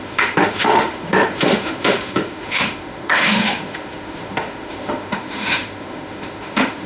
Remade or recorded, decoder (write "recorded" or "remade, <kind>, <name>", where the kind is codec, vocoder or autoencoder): remade, autoencoder, DAC-VAE